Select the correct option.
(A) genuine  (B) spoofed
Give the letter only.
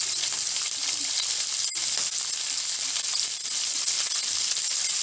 A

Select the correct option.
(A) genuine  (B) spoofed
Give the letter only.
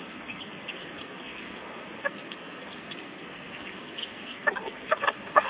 B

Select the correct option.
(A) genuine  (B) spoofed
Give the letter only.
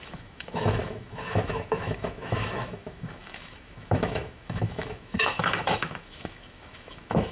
B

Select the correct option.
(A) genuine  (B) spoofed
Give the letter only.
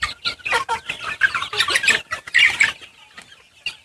A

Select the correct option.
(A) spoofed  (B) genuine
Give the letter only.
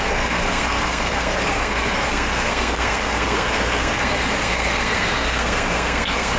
A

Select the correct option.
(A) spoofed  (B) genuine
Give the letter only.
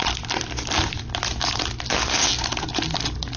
B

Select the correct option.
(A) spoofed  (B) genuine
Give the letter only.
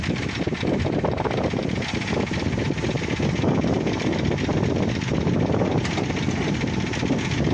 B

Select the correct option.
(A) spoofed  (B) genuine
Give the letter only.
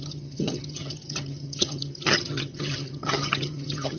A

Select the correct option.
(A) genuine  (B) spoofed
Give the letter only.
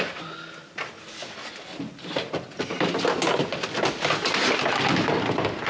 A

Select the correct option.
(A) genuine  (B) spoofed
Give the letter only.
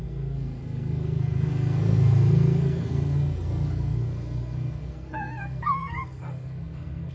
B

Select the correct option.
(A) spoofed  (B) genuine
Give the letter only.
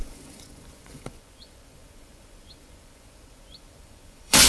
A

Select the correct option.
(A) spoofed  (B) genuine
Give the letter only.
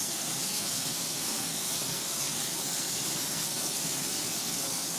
A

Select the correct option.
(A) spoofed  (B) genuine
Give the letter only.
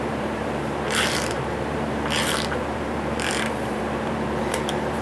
A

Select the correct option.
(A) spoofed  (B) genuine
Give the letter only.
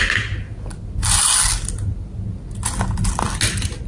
B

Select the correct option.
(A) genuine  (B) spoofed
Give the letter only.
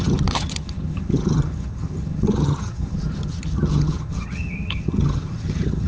B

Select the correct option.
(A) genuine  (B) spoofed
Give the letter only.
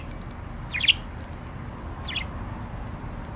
A